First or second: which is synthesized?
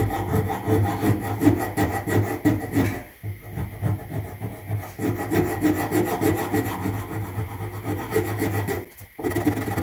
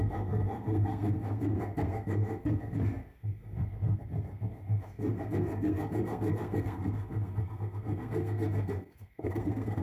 second